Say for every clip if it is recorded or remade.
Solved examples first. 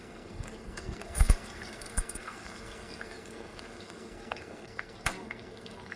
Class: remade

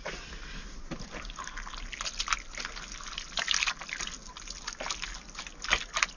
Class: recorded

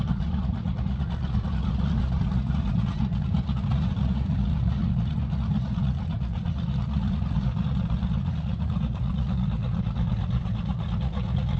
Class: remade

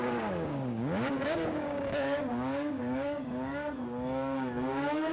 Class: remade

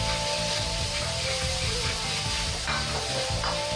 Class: recorded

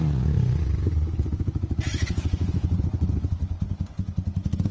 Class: remade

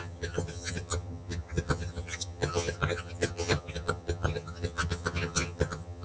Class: remade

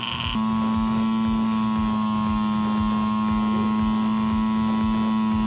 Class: recorded